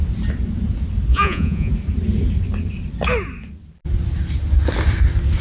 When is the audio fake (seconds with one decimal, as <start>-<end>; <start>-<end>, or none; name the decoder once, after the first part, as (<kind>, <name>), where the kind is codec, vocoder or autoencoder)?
1.1-1.7 (vocoder, Vocos)